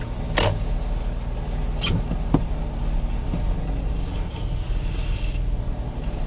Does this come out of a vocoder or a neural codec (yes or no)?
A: no